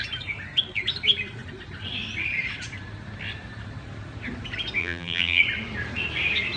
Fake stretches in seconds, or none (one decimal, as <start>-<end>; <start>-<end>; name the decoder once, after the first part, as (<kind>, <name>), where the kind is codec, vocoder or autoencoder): 4.8-5.4 (vocoder, BigVGAN v2)